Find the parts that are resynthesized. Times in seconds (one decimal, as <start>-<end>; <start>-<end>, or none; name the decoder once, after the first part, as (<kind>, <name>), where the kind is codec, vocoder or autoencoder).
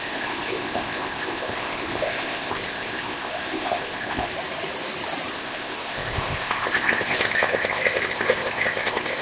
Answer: 0.0-4.3 (codec, ZipCodec); 5.3-9.2